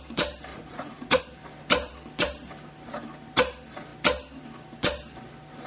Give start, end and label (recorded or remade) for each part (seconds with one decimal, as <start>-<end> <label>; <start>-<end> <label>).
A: 0.0-0.5 recorded; 0.5-1.2 remade; 1.2-5.7 recorded